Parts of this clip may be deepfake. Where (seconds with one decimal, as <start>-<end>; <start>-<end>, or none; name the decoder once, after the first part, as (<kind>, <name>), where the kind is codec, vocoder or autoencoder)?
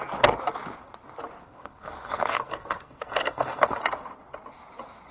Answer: 1.4-3.8 (codec, SNAC)